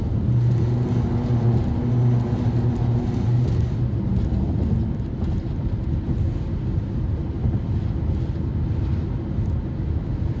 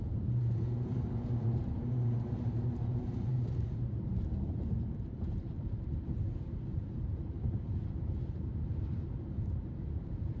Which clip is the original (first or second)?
first